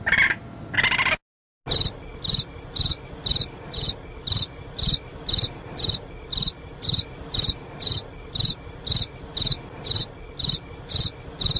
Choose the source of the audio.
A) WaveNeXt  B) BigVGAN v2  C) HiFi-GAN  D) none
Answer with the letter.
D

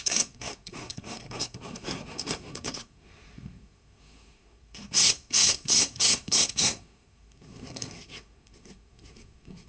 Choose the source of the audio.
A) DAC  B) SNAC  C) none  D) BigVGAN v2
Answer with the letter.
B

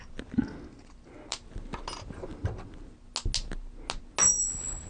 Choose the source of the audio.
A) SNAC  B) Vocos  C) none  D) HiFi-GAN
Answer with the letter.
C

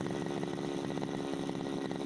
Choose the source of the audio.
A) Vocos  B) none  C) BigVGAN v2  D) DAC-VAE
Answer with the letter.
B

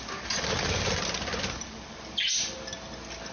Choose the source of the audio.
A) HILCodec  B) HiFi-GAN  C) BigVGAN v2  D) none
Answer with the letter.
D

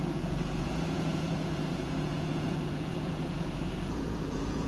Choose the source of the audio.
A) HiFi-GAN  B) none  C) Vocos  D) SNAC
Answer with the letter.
C